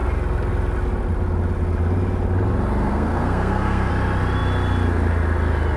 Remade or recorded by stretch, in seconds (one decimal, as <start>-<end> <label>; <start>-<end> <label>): 0.0-2.8 recorded; 2.8-3.9 remade; 3.9-5.8 recorded